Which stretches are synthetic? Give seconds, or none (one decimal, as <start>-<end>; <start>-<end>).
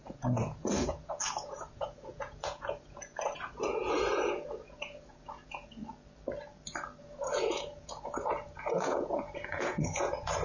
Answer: 0.0-5.8; 7.0-10.4